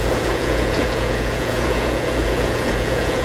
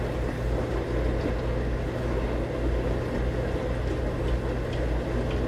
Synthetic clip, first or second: first